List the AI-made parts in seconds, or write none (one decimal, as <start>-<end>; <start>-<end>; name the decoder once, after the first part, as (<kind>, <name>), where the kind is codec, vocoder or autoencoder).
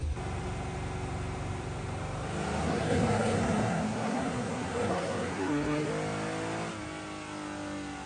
2.6-5.9 (codec, SNAC)